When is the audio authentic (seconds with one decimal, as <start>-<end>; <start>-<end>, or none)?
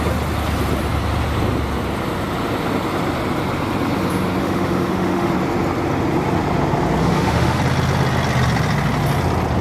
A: 0.0-4.4; 5.3-7.0; 7.6-9.6